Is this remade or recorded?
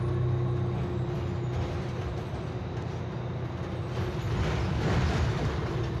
recorded